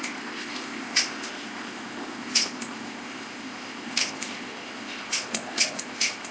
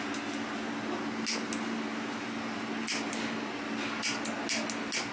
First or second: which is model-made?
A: first